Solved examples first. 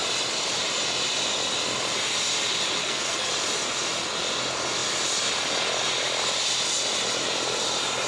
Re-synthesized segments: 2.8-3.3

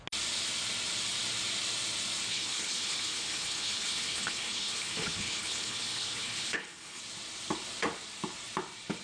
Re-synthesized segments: 2.3-7.0

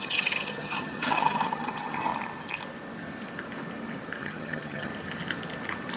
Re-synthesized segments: 0.0-2.1; 4.2-4.9

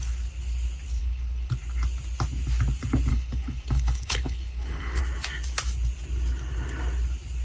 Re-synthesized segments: 1.0-1.5; 3.1-5.0

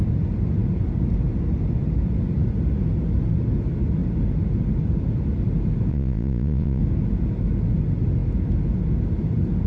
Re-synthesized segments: 5.9-6.8

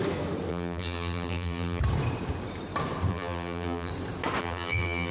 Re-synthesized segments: 0.5-1.8; 3.1-3.9; 4.4-5.1

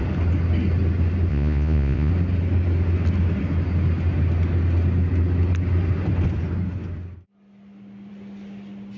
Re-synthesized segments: 1.3-2.1

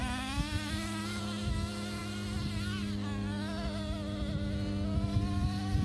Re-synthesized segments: none